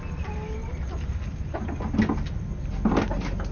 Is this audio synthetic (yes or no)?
no